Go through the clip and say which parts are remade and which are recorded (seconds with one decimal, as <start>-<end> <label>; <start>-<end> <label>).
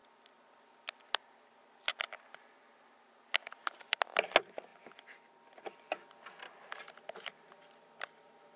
0.0-8.6 recorded